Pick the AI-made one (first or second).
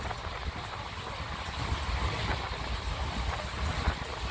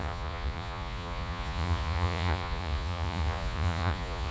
second